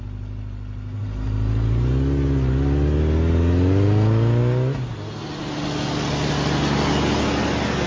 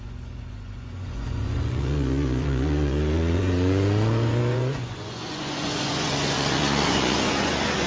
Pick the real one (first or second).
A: first